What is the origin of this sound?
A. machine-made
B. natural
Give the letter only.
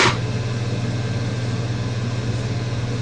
B